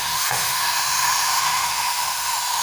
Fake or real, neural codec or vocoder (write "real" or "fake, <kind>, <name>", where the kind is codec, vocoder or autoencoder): fake, autoencoder, DAC-VAE